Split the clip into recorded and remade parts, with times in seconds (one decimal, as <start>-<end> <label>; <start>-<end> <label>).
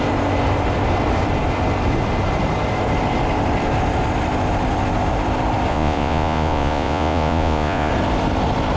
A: 0.0-5.7 recorded; 5.7-7.9 remade; 7.9-8.8 recorded